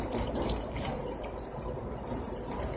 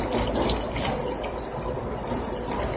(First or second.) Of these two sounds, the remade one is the first